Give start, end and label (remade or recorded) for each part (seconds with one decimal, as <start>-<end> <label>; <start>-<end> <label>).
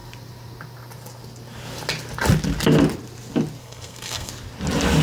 0.0-3.6 recorded; 3.6-4.3 remade; 4.3-5.0 recorded